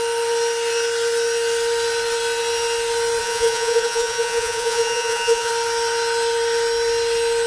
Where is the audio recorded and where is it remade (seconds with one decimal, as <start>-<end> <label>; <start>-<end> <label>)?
0.0-3.2 recorded; 3.2-5.5 remade; 5.5-7.5 recorded